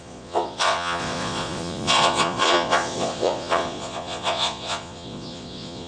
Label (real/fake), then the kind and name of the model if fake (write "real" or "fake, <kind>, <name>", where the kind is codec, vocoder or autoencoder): fake, vocoder, Vocos